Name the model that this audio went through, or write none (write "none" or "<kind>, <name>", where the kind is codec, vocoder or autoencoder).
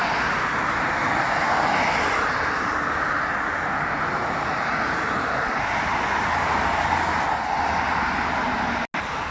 none